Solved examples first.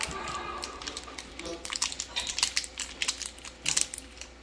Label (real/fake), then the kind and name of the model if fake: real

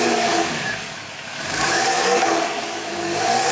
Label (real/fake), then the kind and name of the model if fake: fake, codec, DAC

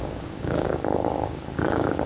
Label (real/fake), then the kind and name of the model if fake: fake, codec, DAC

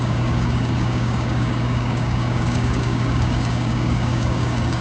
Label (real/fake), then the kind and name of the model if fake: fake, codec, DAC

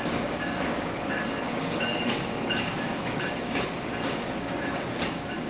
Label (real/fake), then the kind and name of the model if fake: fake, codec, DAC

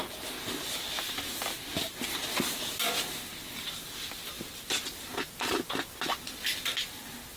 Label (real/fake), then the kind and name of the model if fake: real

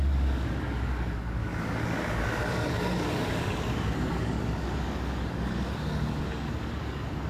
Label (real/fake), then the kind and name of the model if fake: fake, codec, DAC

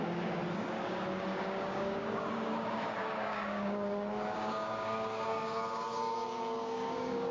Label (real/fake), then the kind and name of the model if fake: fake, codec, DAC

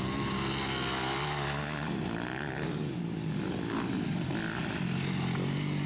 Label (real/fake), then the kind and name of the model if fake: real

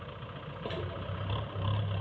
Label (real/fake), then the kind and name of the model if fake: real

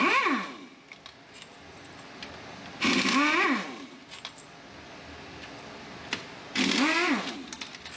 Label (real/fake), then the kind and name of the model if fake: real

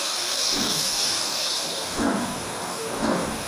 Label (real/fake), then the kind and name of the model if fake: fake, codec, DAC